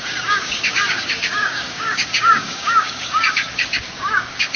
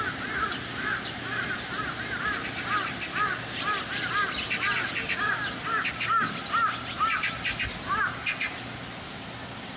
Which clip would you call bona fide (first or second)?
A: second